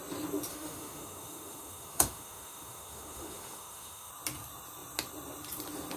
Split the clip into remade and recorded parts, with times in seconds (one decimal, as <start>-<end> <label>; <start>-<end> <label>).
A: 0.0-0.5 recorded; 0.5-4.1 remade; 4.1-6.0 recorded